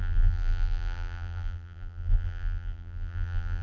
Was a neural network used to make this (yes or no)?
yes